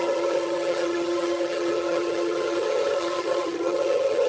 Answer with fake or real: fake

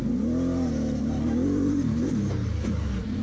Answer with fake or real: real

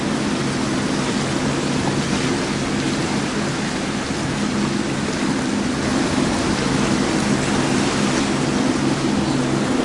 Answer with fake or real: real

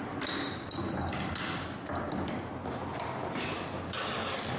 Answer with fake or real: real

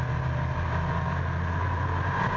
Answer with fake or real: real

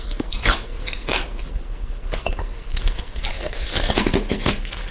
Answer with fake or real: fake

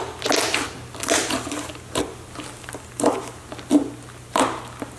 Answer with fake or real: real